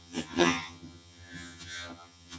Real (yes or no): no